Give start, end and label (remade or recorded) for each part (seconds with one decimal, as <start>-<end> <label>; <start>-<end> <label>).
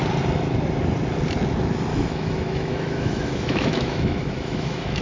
0.0-1.9 recorded; 1.9-5.0 remade